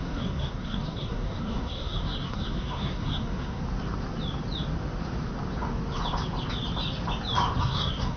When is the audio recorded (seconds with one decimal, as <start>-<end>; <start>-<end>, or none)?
3.6-7.6